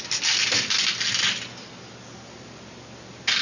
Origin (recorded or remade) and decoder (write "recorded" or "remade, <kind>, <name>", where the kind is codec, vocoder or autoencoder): recorded